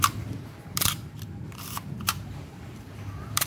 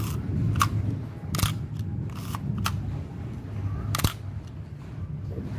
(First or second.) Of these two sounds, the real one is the second